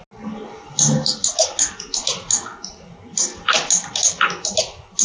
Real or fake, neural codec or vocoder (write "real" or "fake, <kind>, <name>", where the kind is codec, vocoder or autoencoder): real